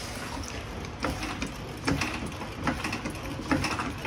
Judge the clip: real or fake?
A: real